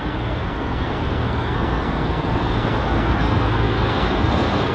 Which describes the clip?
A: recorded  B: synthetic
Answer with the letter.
B